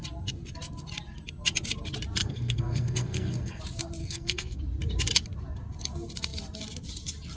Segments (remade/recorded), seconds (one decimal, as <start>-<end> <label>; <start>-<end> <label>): 0.0-2.2 recorded; 2.2-3.6 remade; 3.6-4.0 recorded; 4.0-4.6 remade; 4.6-7.4 recorded